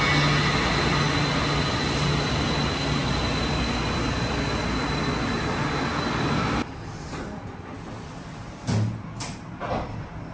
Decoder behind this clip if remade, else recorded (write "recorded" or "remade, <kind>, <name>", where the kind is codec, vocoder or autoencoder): recorded